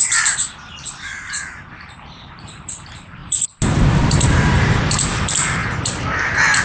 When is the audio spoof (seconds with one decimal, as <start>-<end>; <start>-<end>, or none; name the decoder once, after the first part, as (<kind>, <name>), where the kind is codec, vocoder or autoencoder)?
0.0-3.2 (vocoder, BigVGAN v2); 4.1-6.6